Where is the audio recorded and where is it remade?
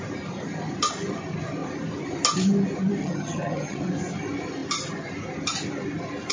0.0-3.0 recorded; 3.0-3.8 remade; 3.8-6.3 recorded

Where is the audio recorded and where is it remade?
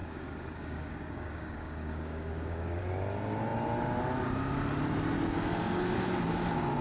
0.0-2.8 remade; 2.8-6.8 recorded